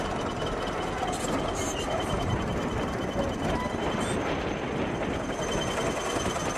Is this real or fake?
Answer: real